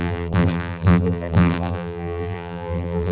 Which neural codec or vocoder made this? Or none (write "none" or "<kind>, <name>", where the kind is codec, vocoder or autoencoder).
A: vocoder, BigVGAN v2